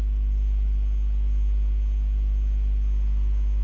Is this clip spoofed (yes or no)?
no